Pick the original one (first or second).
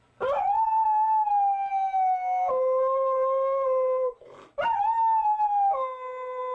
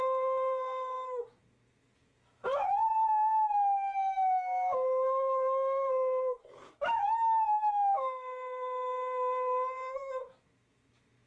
first